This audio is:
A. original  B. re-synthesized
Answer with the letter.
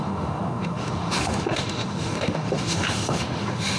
B